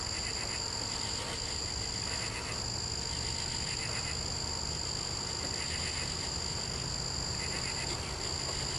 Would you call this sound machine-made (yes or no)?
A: no